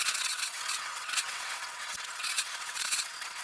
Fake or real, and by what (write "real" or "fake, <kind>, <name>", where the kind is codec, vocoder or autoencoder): fake, vocoder, WaveNeXt